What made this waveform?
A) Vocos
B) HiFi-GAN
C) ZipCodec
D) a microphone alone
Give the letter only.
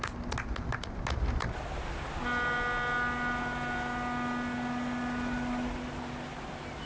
D